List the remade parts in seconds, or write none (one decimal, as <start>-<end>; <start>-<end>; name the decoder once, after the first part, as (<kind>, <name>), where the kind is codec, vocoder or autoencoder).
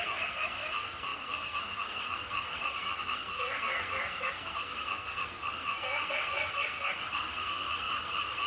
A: 0.0-8.5 (codec, SNAC)